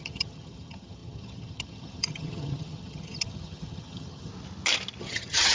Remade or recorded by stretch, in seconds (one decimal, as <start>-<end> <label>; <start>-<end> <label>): 0.0-4.3 remade; 4.3-5.0 recorded; 5.0-5.5 remade

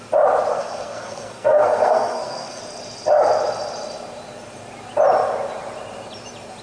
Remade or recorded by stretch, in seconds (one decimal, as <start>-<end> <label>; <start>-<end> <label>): 0.0-0.5 recorded; 0.5-2.6 remade; 2.6-6.6 recorded

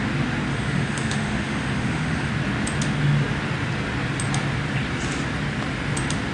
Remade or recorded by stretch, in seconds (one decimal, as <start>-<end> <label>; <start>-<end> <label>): 0.0-0.5 recorded; 0.5-2.3 remade; 2.3-6.3 recorded

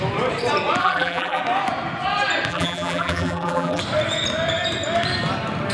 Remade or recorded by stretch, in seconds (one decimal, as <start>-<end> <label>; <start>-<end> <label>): 0.0-0.8 recorded; 0.8-1.4 remade; 1.4-2.5 recorded; 2.5-3.8 remade; 3.8-5.7 recorded

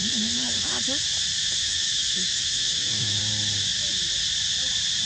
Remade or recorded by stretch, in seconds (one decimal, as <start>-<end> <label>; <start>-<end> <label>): 0.0-0.8 remade; 0.8-1.6 recorded; 1.6-3.2 remade; 3.2-5.0 recorded

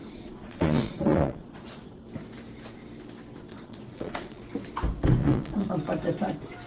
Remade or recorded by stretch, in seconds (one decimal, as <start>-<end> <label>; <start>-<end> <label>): 0.0-2.0 remade; 2.0-3.5 recorded; 3.5-4.4 remade; 4.4-5.2 recorded; 5.2-5.7 remade; 5.7-6.7 recorded